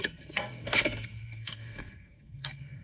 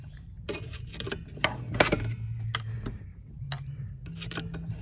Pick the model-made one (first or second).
first